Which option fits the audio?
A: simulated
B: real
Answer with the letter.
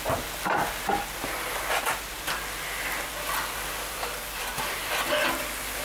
B